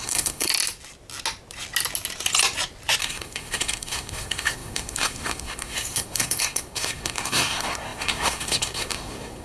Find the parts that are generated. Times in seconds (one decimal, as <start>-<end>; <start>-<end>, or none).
0.0-0.5; 3.0-9.4